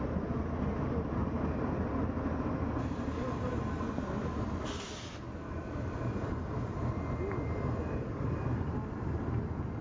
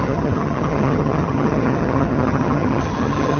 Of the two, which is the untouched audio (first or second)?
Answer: first